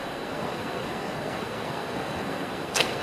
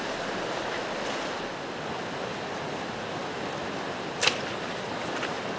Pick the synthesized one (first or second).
first